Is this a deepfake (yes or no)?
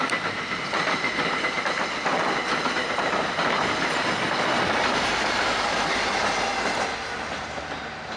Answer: no